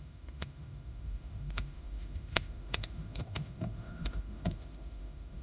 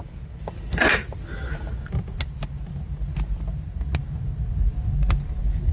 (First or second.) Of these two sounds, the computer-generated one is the first